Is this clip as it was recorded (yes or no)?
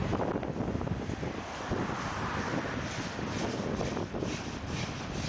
yes